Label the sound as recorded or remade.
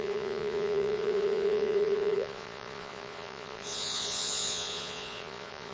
remade